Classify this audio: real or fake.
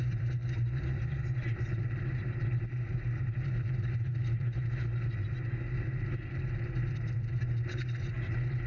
fake